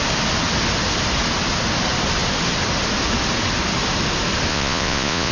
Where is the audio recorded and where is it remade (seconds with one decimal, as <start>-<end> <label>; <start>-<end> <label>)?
0.0-4.5 recorded; 4.5-5.3 remade